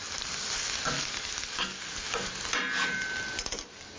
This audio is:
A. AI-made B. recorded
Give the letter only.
B